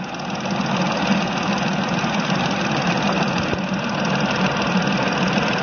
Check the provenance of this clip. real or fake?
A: real